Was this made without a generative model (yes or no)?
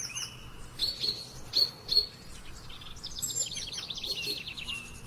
yes